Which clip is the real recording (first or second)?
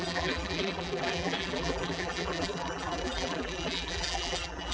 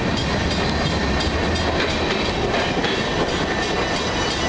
second